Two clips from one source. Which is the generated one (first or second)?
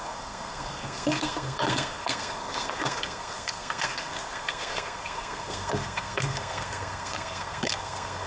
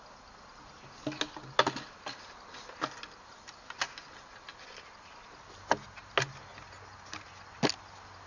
first